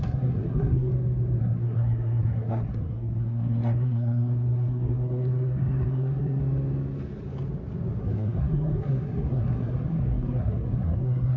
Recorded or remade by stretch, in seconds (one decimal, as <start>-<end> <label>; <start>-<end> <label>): 0.0-0.9 remade; 0.9-1.4 recorded; 1.4-6.4 remade; 6.4-8.0 recorded; 8.0-11.4 remade